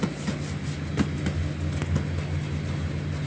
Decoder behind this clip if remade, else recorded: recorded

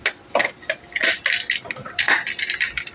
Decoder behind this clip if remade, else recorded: recorded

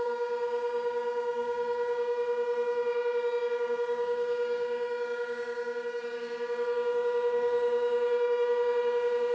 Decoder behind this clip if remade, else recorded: remade, codec, DAC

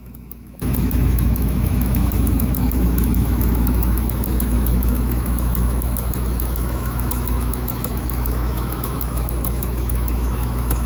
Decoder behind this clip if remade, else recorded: remade, autoencoder, DAC-VAE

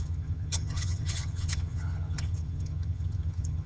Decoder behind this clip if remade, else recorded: remade, vocoder, HiFi-GAN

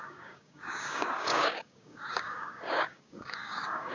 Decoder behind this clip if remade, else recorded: remade, codec, DAC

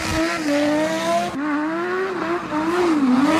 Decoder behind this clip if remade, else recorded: recorded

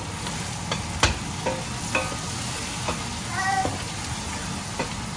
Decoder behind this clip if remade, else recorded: recorded